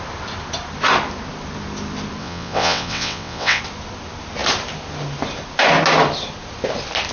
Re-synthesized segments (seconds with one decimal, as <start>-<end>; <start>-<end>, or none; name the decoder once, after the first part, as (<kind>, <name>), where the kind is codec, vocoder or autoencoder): 2.2-3.6 (vocoder, WaveNeXt)